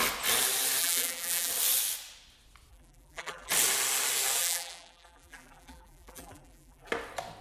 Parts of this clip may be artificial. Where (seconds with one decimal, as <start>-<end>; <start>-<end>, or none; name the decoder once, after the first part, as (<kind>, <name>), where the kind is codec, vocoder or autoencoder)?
0.8-1.5 (vocoder, BigVGAN v2); 2.7-3.5; 4.4-6.9